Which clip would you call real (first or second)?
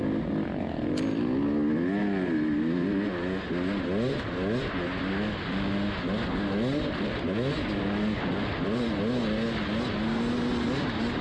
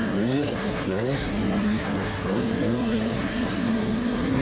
first